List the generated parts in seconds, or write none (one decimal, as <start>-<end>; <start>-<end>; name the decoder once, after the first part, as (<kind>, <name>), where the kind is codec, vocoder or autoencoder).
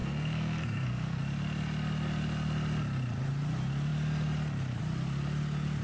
0.0-1.2 (codec, SNAC)